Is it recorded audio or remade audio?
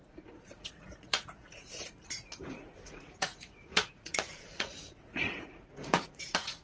remade